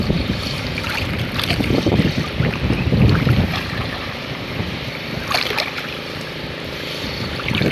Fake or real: fake